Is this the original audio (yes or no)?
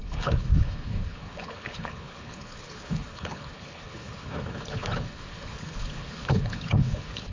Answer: no